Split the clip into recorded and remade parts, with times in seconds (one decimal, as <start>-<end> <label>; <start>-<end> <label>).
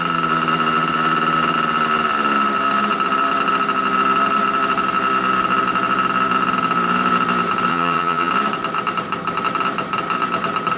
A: 0.0-7.7 recorded; 7.7-8.3 remade; 8.3-10.8 recorded